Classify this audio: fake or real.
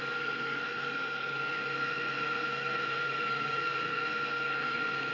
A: fake